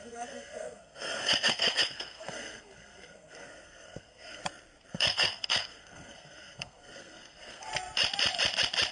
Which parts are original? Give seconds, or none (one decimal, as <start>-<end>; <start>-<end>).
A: 4.4-4.9; 7.7-8.9